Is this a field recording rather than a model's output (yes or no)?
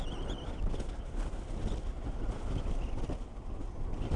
yes